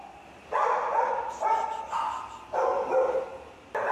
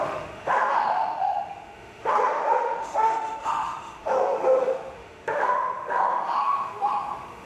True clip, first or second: first